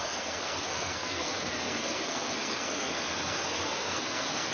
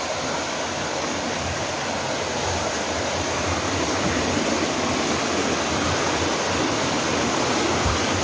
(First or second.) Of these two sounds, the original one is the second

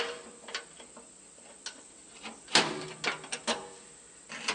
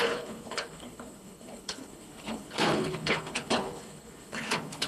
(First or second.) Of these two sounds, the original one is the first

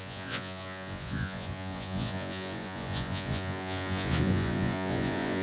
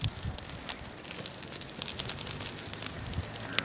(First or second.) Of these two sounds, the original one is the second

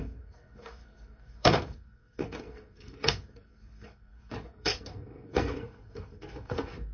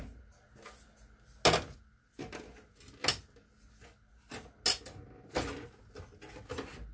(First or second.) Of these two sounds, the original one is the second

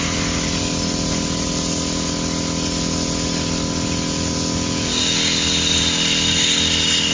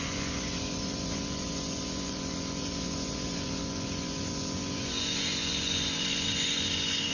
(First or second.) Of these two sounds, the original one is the first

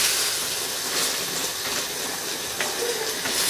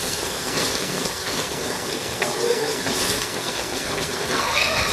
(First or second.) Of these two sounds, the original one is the first